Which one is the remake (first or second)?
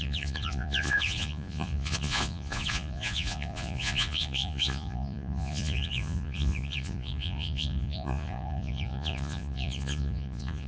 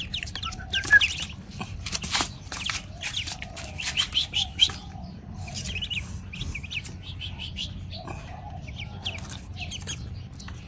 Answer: first